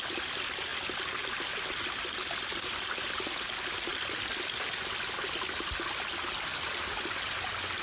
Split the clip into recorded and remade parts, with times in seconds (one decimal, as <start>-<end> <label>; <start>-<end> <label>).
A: 0.0-7.8 recorded